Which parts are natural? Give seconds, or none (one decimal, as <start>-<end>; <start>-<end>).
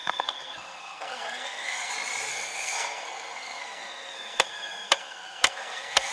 1.9-2.3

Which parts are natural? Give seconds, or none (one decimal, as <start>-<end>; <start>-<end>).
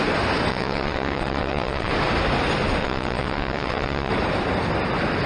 0.0-0.5; 1.9-2.8; 4.1-5.3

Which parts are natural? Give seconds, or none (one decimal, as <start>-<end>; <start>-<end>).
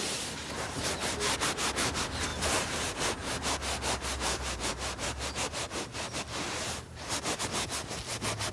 0.0-0.4; 1.1-2.3; 7.4-8.5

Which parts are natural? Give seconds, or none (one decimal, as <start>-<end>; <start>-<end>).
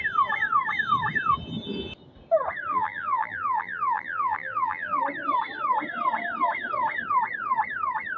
0.0-2.7; 5.0-8.2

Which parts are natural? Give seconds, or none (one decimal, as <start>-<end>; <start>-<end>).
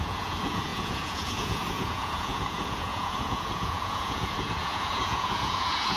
none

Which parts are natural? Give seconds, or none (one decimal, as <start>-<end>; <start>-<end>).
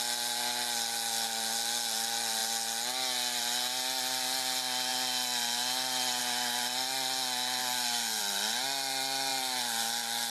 0.0-7.6; 8.2-10.3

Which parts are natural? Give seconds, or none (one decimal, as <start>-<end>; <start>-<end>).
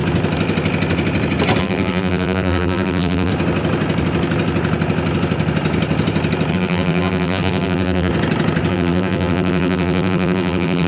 0.0-1.6; 3.3-6.5; 8.1-8.7